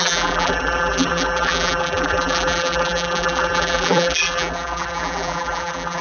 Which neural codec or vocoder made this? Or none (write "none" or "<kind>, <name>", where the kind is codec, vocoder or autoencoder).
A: vocoder, BigVGAN v2